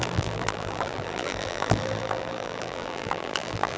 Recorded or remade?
remade